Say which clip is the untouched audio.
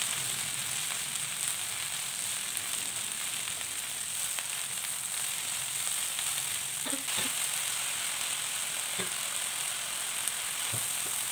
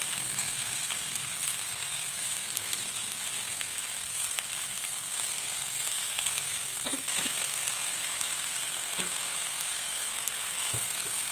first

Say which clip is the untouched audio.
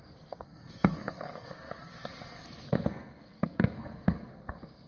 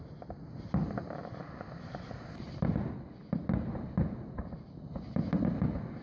second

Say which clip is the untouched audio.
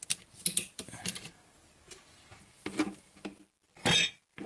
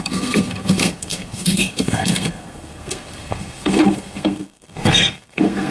first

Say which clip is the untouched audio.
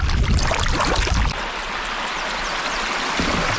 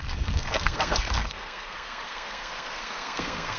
first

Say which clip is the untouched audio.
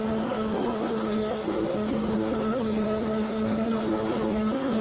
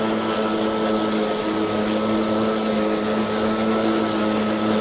second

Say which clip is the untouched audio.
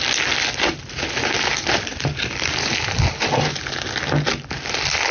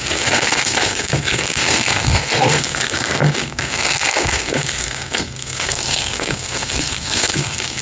first